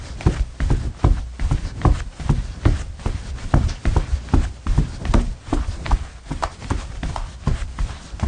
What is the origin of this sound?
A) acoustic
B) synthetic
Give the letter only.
B